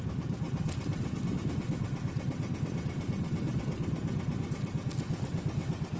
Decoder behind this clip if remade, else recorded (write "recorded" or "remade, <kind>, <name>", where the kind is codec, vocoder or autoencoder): recorded